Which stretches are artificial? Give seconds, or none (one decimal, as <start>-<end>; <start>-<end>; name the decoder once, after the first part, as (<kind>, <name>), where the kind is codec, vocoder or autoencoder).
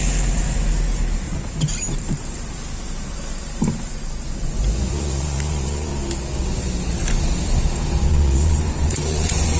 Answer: 4.4-5.9 (vocoder, Vocos); 8.1-9.6